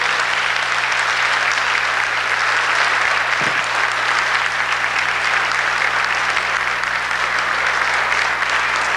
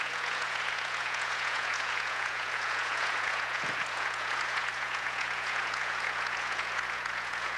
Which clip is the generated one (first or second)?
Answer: second